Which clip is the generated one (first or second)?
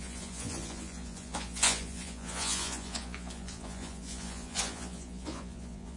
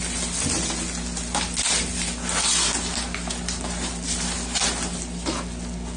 first